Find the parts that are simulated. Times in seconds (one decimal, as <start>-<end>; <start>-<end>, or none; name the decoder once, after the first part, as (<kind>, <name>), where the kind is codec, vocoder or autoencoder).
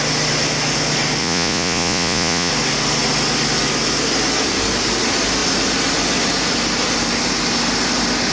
1.2-2.5 (vocoder, Vocos)